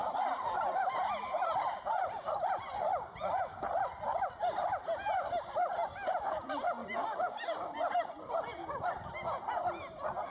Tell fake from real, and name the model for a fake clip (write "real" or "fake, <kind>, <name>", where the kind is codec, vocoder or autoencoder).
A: real